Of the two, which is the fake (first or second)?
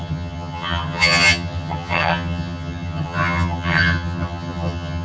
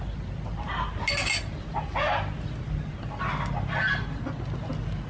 first